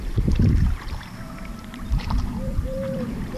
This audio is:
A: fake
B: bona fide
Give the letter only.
A